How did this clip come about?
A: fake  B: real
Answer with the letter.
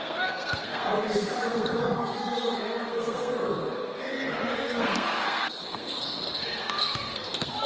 A